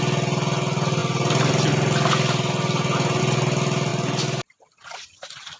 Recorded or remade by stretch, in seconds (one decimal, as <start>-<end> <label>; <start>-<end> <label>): 0.0-5.6 recorded